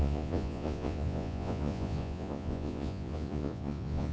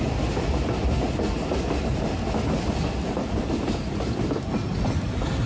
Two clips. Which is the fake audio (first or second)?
first